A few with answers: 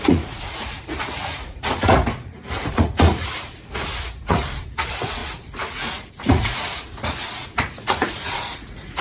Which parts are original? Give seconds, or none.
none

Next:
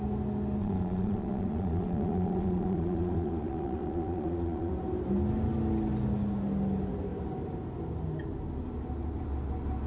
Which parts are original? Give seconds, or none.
0.0-0.6; 4.7-9.9

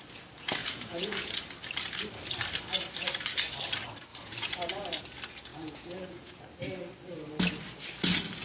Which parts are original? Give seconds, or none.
0.0-0.6; 1.4-4.1; 4.7-5.5; 6.4-8.4